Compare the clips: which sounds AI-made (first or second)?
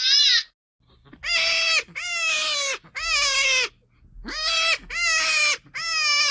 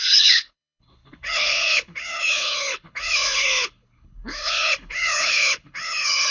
second